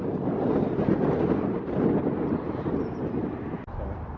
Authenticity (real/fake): real